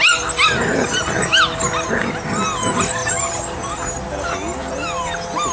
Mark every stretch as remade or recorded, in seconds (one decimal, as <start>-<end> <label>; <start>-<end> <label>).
0.0-5.5 recorded